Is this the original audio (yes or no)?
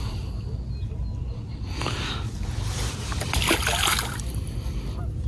yes